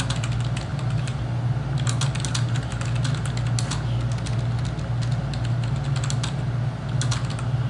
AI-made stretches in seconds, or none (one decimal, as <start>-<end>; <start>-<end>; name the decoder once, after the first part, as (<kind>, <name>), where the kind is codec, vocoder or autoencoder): 0.7-1.2 (vocoder, BigVGAN v2)